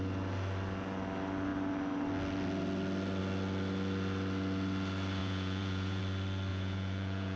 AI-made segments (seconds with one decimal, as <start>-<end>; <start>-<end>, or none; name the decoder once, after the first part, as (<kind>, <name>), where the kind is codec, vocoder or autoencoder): 5.2-6.0 (vocoder, Vocos); 6.5-7.4